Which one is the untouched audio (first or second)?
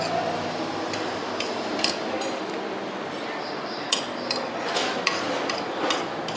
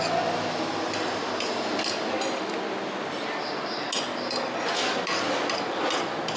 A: second